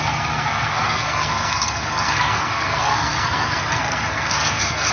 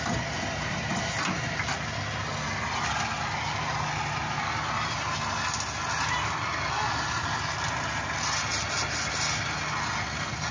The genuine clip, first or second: second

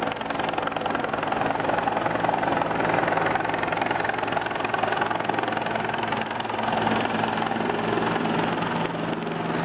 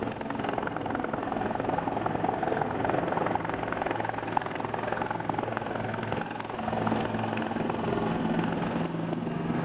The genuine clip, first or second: first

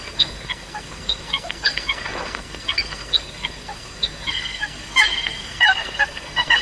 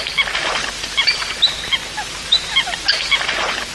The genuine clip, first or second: second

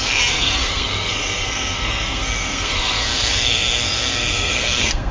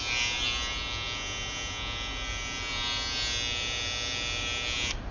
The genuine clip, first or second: second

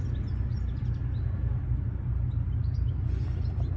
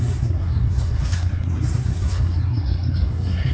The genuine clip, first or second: first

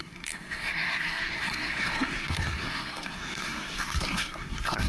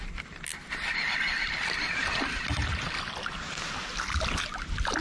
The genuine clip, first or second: second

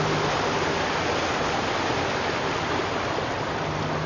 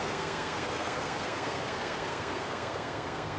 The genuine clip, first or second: first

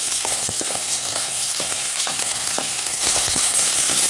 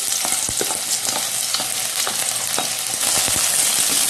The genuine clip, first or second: second